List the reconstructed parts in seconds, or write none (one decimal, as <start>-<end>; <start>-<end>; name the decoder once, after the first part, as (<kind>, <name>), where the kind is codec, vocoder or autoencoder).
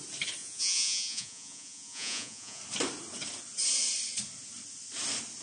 0.4-2.6 (vocoder, Vocos)